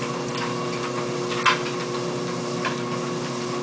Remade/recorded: recorded